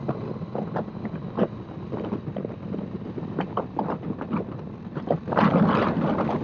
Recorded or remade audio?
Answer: recorded